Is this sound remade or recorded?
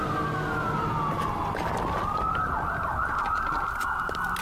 recorded